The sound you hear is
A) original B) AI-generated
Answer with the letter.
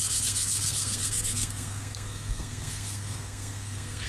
B